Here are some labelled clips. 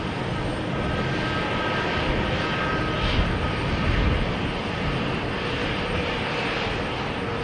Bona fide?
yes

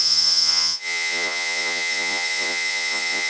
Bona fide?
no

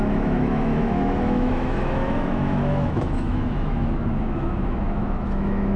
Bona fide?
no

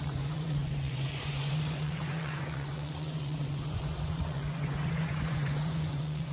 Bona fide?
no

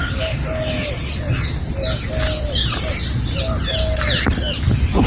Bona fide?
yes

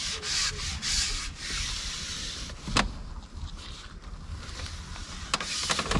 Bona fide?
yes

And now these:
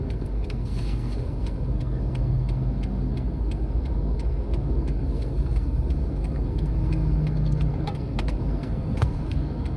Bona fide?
no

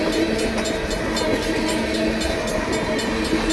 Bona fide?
yes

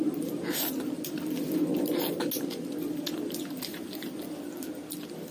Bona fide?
yes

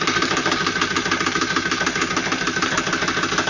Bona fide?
yes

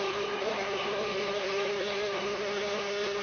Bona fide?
no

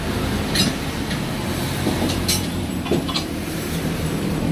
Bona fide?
no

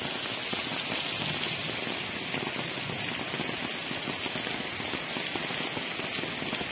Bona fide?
yes